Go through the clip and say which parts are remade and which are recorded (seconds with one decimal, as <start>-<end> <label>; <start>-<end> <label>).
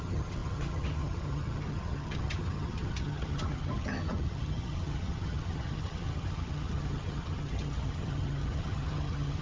0.0-9.4 remade